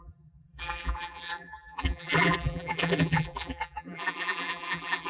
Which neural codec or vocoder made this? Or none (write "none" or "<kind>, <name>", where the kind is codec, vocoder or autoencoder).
vocoder, BigVGAN v2